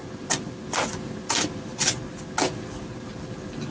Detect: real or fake real